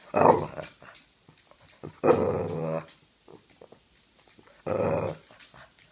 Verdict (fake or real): real